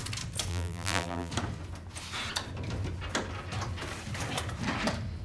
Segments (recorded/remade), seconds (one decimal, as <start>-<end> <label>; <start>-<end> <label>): 0.0-0.5 recorded; 0.5-1.3 remade; 1.3-5.2 recorded